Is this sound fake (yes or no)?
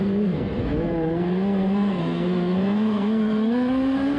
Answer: yes